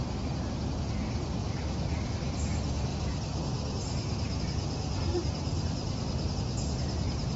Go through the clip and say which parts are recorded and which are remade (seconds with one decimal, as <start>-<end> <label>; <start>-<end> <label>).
0.0-1.4 recorded; 1.4-2.5 remade; 2.5-5.1 recorded; 5.1-6.3 remade; 6.3-7.4 recorded